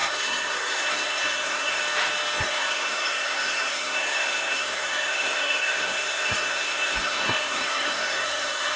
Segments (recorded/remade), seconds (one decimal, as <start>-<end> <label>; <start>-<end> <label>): 0.0-1.8 remade; 1.8-2.4 recorded; 2.4-8.8 remade